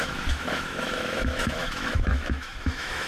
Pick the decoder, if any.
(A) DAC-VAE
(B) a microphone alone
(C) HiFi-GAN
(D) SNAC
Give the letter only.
A